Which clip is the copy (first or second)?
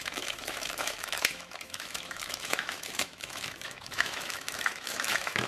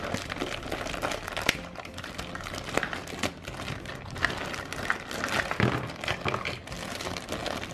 first